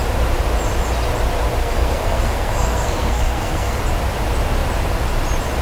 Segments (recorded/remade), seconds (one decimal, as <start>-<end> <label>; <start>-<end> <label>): 0.0-1.6 recorded; 1.6-3.8 remade; 3.8-5.6 recorded